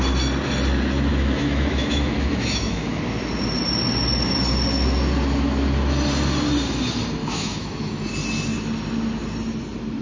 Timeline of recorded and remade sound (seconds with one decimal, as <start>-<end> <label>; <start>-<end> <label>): 0.0-1.1 recorded; 1.1-3.0 remade; 3.0-7.2 recorded; 7.2-8.1 remade; 8.1-10.0 recorded